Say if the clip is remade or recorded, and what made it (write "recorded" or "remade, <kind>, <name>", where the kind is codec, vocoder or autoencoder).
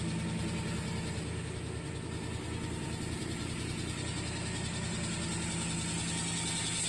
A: recorded